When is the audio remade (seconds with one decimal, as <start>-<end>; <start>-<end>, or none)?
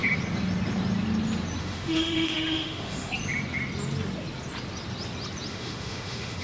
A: 1.6-3.1; 5.5-6.4